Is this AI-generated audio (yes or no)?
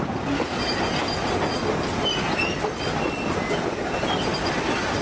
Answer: no